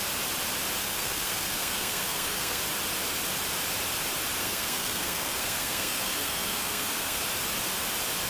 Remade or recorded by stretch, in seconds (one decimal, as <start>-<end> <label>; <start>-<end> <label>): 0.0-0.8 recorded; 0.8-2.6 remade; 2.6-4.4 recorded; 4.4-7.2 remade; 7.2-8.3 recorded